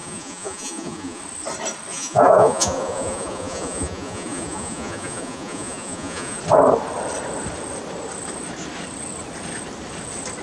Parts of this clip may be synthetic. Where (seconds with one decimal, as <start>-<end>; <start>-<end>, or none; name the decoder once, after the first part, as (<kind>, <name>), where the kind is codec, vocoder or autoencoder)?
0.0-1.2 (vocoder, Vocos); 1.9-6.4